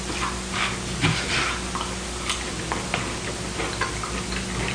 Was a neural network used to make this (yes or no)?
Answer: no